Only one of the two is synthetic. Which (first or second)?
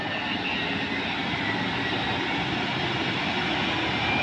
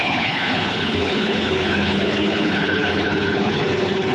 second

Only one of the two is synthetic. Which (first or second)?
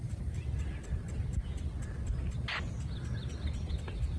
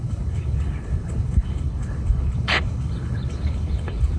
second